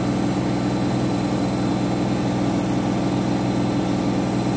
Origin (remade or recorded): recorded